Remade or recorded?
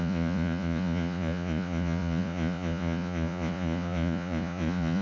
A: remade